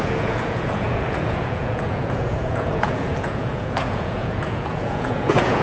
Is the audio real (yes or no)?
no